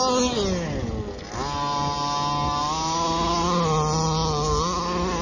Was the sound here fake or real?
real